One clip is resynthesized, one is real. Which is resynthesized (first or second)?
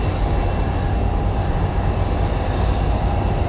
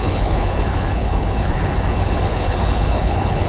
second